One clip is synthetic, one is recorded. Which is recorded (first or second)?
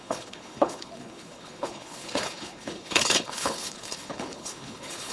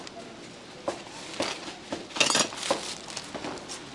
second